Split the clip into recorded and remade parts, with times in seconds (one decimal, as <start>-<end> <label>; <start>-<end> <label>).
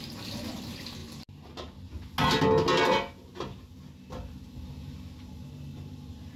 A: 0.0-6.4 recorded